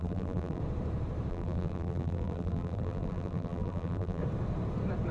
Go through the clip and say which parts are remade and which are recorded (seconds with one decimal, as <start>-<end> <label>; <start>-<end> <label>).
0.0-0.6 remade; 0.6-1.3 recorded; 1.3-4.2 remade; 4.2-5.1 recorded